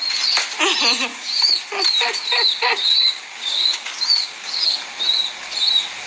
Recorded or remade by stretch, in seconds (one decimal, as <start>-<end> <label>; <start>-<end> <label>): 0.0-1.1 recorded; 1.1-1.6 remade; 1.6-2.8 recorded; 2.8-4.8 remade; 4.8-6.1 recorded